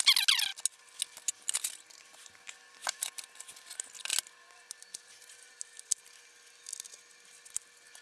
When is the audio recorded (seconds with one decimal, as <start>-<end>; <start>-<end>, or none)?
0.0-8.0

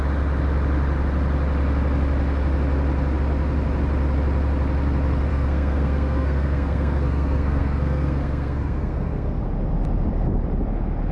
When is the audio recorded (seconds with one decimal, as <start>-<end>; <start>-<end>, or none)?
0.0-5.3; 9.4-11.1

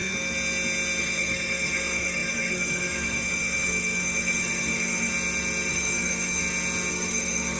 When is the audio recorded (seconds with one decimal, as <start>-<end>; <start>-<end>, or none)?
0.0-1.0; 5.1-5.7; 6.4-6.9

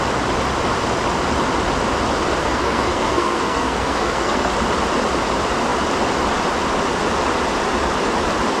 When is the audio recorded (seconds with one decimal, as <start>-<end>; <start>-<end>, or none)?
0.0-2.4; 4.5-8.6

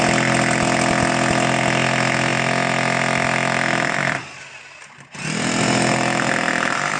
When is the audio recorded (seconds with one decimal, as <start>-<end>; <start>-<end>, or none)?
0.0-7.0

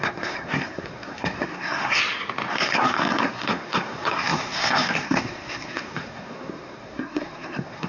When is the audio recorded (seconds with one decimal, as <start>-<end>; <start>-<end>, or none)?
2.0-2.5